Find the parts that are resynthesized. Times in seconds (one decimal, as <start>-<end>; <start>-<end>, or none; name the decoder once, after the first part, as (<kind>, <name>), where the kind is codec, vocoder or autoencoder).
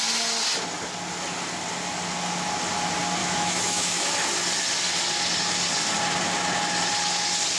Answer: 3.2-4.1 (autoencoder, DAC-VAE)